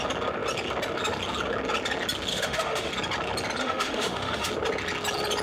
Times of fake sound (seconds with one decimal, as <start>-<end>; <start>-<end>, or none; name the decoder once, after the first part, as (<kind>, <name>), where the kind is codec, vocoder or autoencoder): 2.3-2.9 (autoencoder, DAC-VAE); 3.6-4.5